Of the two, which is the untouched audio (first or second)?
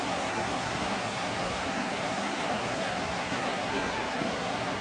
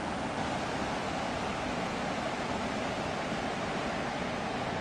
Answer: second